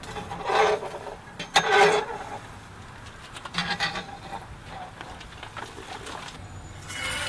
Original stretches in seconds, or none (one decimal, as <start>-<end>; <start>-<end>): 0.0-7.3